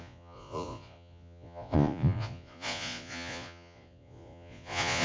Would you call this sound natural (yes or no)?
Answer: no